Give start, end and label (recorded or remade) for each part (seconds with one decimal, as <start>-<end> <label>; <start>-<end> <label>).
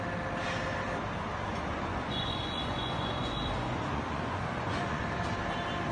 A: 0.0-1.5 recorded; 1.5-5.0 remade; 5.0-5.9 recorded